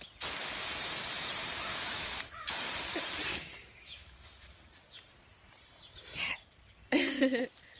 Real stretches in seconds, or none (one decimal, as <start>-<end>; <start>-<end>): 0.0-1.7; 2.3-3.3; 4.6-7.8